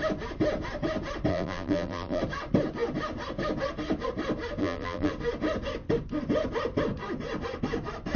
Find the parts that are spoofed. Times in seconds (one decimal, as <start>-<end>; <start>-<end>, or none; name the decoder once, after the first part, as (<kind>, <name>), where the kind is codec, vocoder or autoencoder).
1.3-2.2 (vocoder, BigVGAN v2); 4.6-5.1